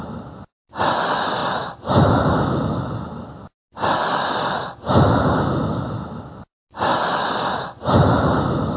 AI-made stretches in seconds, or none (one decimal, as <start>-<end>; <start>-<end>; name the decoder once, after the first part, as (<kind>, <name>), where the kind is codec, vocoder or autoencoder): none